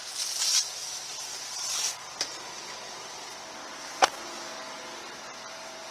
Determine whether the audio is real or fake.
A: real